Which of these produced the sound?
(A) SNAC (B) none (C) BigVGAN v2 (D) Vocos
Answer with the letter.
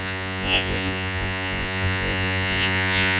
D